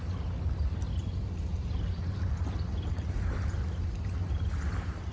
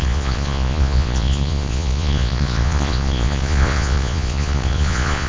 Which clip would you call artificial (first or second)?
second